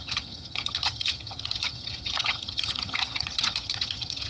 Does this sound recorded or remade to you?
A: remade